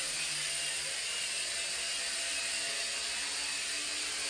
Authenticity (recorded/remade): recorded